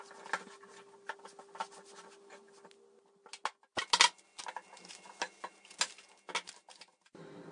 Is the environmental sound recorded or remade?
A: recorded